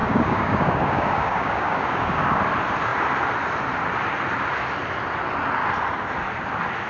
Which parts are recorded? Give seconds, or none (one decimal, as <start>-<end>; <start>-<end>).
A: 2.4-6.9